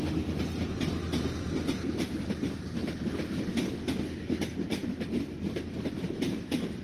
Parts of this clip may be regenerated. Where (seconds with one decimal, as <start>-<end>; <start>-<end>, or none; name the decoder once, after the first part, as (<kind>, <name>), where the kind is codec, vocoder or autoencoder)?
0.0-2.8 (vocoder, BigVGAN v2); 4.4-6.8